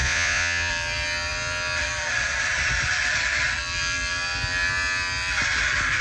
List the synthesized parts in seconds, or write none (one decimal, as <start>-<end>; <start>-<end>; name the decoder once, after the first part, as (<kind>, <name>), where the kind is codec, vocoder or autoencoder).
0.0-0.7 (vocoder, Vocos)